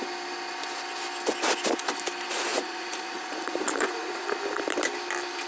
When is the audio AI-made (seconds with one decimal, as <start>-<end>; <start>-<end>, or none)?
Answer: 2.5-4.2